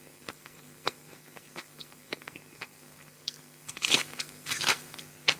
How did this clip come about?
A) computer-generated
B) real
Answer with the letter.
A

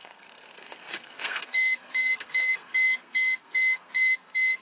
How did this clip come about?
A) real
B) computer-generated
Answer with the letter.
B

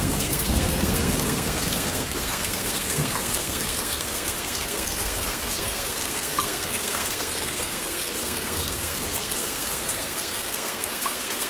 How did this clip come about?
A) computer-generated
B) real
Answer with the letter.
A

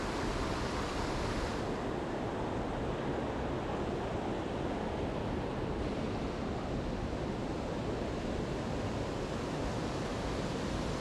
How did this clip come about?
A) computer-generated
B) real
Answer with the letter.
B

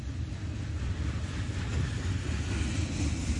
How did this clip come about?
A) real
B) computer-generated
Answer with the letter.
A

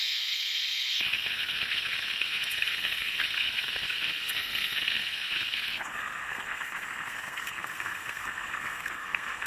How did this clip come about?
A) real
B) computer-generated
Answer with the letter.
B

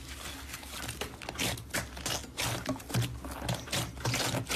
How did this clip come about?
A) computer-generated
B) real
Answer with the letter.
B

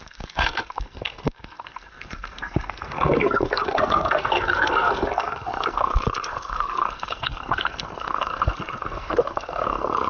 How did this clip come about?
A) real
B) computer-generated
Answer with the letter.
B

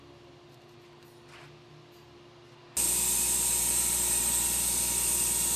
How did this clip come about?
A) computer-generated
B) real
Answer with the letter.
B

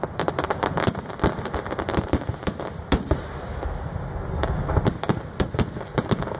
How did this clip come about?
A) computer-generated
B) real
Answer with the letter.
B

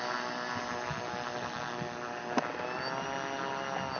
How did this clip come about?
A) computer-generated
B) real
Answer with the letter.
B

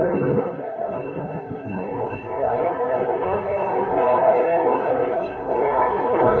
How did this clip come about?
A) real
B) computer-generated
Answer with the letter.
B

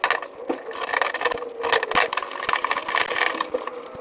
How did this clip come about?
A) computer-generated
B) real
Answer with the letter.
B